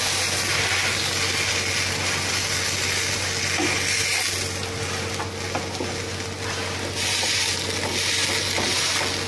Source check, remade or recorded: recorded